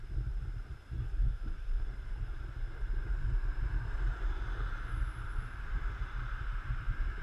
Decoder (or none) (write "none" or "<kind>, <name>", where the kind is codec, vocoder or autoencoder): vocoder, BigVGAN v2